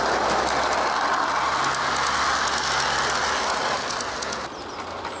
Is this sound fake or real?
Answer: real